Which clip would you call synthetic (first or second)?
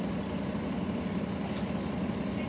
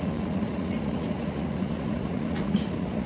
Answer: second